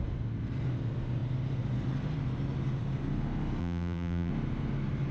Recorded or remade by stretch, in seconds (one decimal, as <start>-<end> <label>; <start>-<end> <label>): 0.0-3.6 recorded; 3.6-4.3 remade; 4.3-5.1 recorded